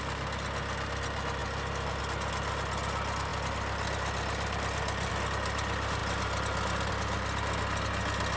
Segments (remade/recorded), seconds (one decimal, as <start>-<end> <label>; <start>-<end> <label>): 0.0-8.4 recorded